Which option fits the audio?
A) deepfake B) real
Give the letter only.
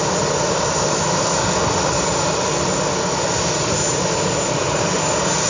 B